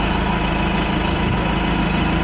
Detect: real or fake real